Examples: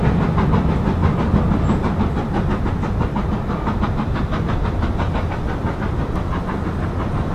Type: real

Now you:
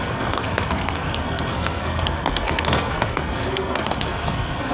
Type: fake